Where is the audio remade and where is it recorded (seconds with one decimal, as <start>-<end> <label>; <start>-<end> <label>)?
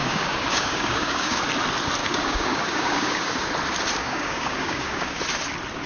0.0-1.4 remade; 1.4-2.0 recorded; 2.0-3.5 remade; 3.5-4.0 recorded; 4.0-5.2 remade; 5.2-5.9 recorded